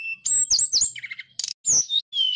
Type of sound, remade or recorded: recorded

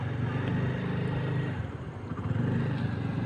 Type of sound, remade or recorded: recorded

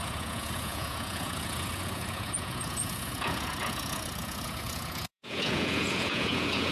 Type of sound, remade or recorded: remade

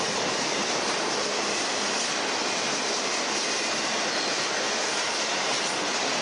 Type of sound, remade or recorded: recorded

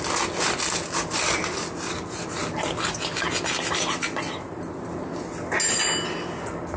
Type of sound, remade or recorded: recorded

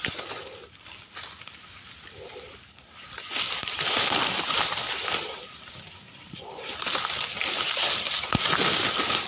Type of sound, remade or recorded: recorded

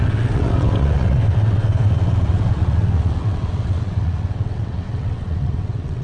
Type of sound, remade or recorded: remade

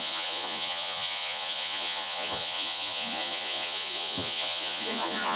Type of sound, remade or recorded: remade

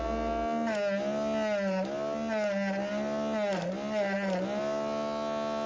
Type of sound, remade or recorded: recorded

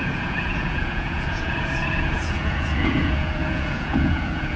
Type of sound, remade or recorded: remade